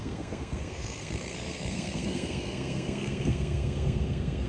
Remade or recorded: remade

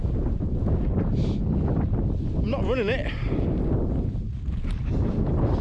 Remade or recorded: recorded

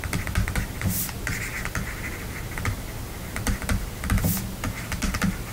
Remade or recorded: recorded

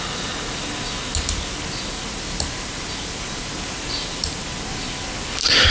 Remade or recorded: recorded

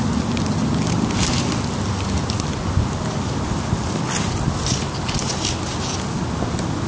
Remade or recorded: recorded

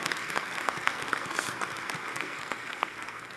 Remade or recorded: remade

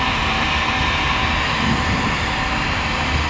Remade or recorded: recorded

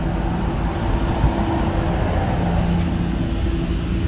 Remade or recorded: recorded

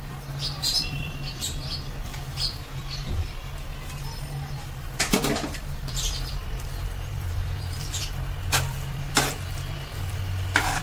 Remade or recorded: remade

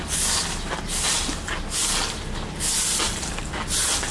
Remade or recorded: recorded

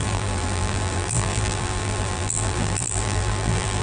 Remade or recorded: remade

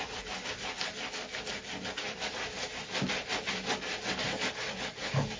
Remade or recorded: recorded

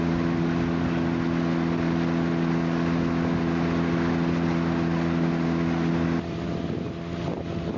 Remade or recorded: recorded